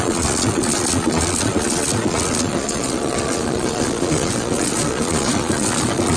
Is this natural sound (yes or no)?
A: no